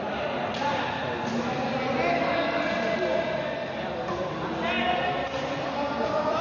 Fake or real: real